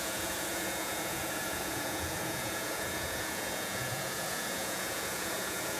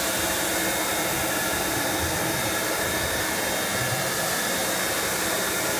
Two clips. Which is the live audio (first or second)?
second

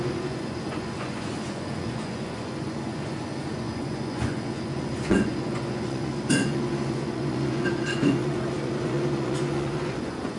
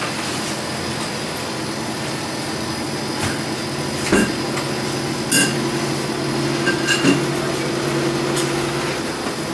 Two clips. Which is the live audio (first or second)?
second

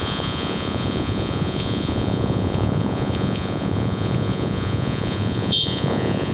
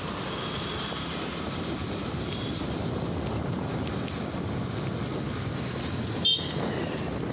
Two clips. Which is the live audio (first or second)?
second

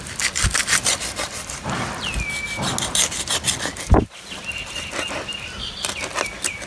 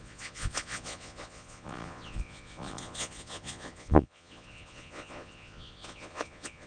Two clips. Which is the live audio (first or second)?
first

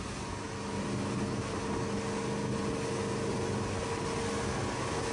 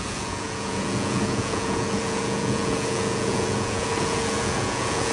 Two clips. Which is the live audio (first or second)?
first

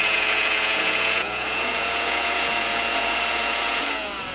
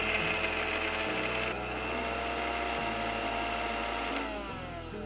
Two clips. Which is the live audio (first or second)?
second